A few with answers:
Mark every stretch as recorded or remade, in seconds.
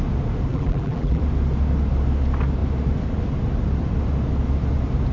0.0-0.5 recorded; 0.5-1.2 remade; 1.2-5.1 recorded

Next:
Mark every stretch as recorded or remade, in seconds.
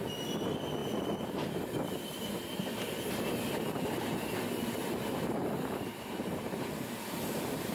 0.0-0.8 recorded; 0.8-1.6 remade; 1.6-4.8 recorded; 4.8-7.7 remade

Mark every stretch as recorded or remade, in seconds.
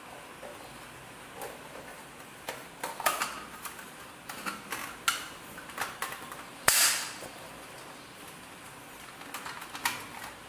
0.0-0.5 recorded; 0.5-1.0 remade; 1.0-1.9 recorded; 1.9-4.0 remade; 4.0-6.0 recorded; 6.0-9.1 remade; 9.1-10.5 recorded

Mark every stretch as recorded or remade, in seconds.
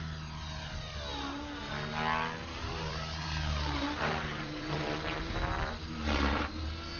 0.0-2.4 recorded; 2.4-6.6 remade; 6.6-7.0 recorded